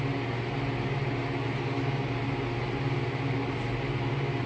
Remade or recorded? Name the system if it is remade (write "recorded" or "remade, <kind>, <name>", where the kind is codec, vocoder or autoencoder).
recorded